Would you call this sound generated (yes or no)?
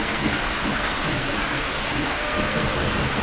yes